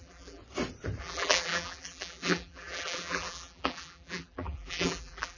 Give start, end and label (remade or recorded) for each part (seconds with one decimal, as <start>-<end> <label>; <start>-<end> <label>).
0.0-0.4 remade; 0.4-1.0 recorded; 1.0-5.4 remade